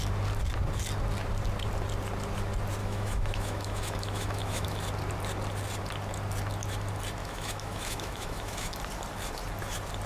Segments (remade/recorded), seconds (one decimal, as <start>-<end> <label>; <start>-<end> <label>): 0.0-2.8 recorded; 2.8-4.8 remade; 4.8-7.2 recorded; 7.2-8.8 remade; 8.8-10.1 recorded